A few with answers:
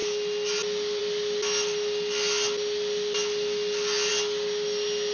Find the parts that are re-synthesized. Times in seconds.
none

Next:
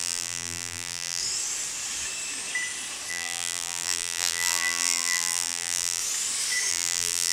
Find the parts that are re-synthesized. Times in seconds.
0.0-1.2 (vocoder, BigVGAN v2); 3.1-6.0; 6.7-7.3